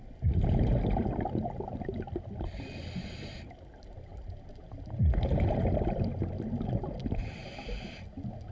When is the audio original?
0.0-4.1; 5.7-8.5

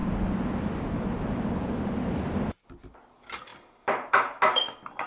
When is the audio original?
0.0-5.1